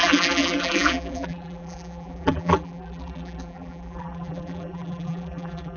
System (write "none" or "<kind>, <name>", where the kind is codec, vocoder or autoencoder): vocoder, BigVGAN v2